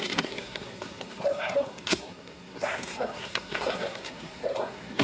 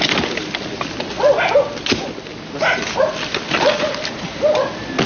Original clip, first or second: second